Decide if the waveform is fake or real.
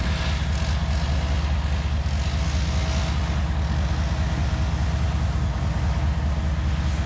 real